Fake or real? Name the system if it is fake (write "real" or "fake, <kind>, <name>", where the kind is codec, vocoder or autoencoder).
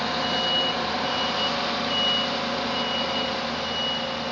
real